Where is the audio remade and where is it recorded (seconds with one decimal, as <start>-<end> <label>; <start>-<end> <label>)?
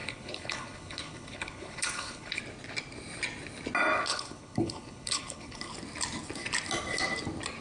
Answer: 0.0-2.4 remade; 2.4-4.1 recorded; 4.1-5.7 remade; 5.7-7.6 recorded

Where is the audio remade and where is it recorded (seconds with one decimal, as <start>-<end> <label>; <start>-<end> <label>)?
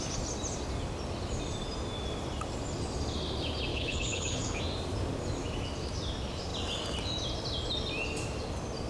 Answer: 0.0-3.7 recorded; 3.7-4.6 remade; 4.6-8.9 recorded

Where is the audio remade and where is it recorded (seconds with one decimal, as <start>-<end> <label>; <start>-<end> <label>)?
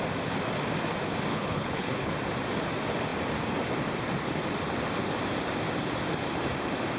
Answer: 0.0-1.3 recorded; 1.3-2.1 remade; 2.1-7.0 recorded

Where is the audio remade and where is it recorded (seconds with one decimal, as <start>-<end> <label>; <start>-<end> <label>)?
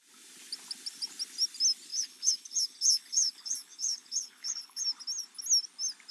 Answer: 0.0-1.9 recorded; 1.9-4.8 remade; 4.8-6.1 recorded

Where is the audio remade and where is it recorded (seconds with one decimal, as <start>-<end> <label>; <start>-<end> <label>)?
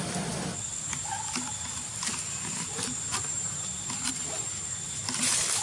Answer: 0.0-5.6 recorded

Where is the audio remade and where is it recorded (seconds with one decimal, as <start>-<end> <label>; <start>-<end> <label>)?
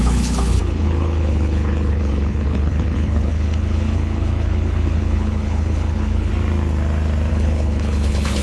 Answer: 0.0-6.3 remade; 6.3-7.3 recorded; 7.3-8.4 remade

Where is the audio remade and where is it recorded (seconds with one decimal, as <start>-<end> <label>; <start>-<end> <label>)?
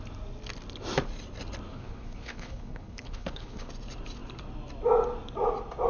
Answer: 0.0-1.7 recorded; 1.7-3.7 remade; 3.7-5.9 recorded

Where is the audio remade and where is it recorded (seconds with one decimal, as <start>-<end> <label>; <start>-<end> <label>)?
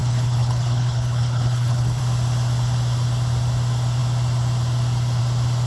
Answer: 0.0-2.0 remade; 2.0-5.7 recorded